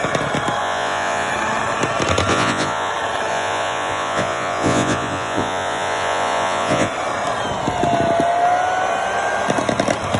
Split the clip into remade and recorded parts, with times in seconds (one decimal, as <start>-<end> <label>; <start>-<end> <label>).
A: 0.0-0.6 recorded; 0.6-1.3 remade; 1.3-2.3 recorded; 2.3-2.9 remade; 2.9-3.3 recorded; 3.3-6.9 remade; 6.9-10.2 recorded